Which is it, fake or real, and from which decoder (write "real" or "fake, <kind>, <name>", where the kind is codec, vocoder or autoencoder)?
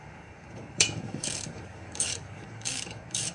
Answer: fake, codec, DAC